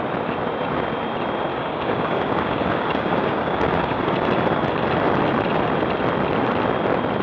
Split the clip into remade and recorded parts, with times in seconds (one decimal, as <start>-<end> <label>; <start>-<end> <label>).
0.0-1.5 recorded; 1.5-4.0 remade; 4.0-7.2 recorded